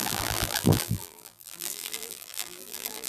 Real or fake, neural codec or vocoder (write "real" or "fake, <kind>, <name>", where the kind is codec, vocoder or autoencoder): fake, vocoder, BigVGAN v2